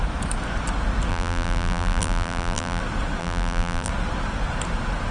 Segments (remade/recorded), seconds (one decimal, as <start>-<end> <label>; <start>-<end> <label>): 0.0-1.1 recorded; 1.1-2.8 remade; 2.8-3.2 recorded; 3.2-3.9 remade; 3.9-5.1 recorded